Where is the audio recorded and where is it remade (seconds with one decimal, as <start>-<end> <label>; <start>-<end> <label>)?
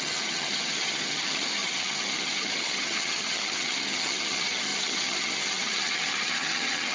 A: 0.0-6.9 remade